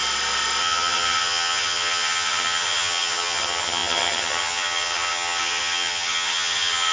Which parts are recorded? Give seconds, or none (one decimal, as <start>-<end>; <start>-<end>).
0.0-0.6

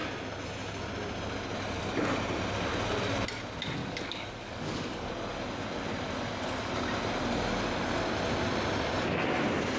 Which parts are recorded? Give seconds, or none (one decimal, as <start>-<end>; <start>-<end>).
0.0-3.8; 5.1-9.8

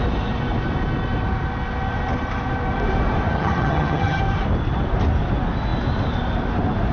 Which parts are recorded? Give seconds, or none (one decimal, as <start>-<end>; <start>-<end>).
0.0-3.3; 4.2-6.9

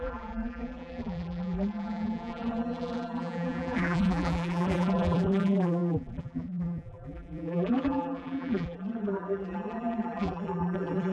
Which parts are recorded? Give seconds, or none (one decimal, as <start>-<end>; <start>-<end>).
none

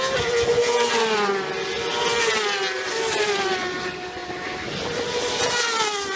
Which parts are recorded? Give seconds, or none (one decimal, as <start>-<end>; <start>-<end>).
0.0-4.2; 5.1-6.2

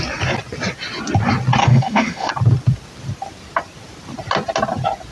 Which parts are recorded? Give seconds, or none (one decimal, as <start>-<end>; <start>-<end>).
0.0-1.6; 2.3-5.1